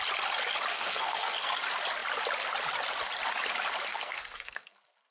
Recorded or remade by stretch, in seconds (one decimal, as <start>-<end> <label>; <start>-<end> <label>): 0.0-0.7 recorded; 0.7-1.5 remade; 1.5-3.9 recorded; 3.9-5.1 remade

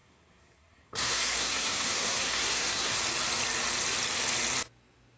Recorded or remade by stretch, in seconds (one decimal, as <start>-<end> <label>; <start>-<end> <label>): 0.0-3.0 remade; 3.0-5.2 recorded

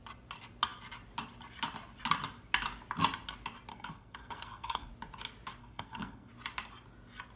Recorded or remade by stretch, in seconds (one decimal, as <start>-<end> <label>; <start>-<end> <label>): 0.0-3.7 recorded; 3.7-4.9 remade; 4.9-5.6 recorded; 5.6-6.3 remade; 6.3-7.4 recorded

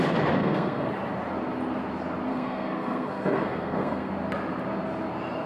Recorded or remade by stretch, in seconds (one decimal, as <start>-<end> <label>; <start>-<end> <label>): 0.0-0.4 recorded; 0.4-0.9 remade; 0.9-2.3 recorded; 2.3-4.1 remade; 4.1-5.5 recorded

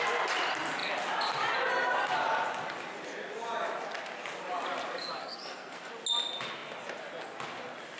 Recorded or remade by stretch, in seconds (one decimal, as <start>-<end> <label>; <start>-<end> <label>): 0.0-5.2 recorded; 5.2-5.9 remade; 5.9-8.0 recorded

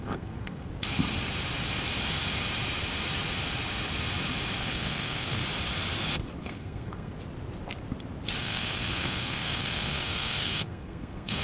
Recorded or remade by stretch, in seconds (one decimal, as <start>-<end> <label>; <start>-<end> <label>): 0.0-0.7 remade; 0.7-4.6 recorded; 4.6-5.4 remade; 5.4-6.4 recorded; 6.4-7.1 remade; 7.1-8.4 recorded; 8.4-11.4 remade